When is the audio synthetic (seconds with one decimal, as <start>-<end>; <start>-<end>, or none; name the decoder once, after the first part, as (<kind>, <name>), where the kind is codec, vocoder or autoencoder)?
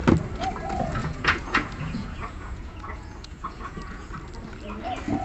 1.0-4.1 (vocoder, Vocos)